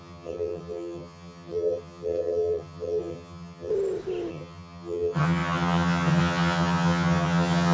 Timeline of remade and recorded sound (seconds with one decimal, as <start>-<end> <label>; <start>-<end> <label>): 0.0-3.7 remade; 3.7-4.3 recorded; 4.3-7.7 remade